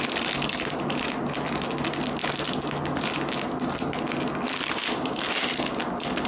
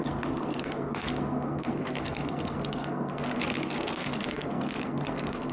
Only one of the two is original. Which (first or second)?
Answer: first